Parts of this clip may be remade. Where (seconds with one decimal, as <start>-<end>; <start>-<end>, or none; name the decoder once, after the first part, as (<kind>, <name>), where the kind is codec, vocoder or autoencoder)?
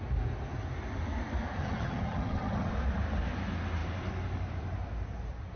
1.6-2.7 (vocoder, HiFi-GAN)